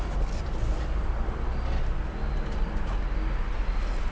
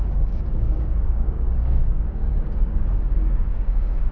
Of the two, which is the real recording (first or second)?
first